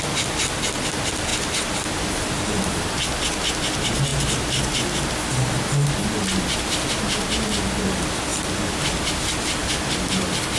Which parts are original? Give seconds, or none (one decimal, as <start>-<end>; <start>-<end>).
0.0-10.6